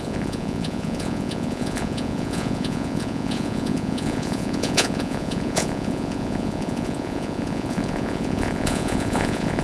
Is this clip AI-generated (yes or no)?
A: yes